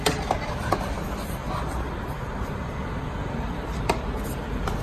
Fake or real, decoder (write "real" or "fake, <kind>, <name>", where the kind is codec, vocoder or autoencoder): fake, vocoder, BigVGAN v2